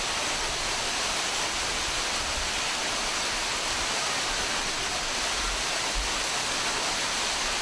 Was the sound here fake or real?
real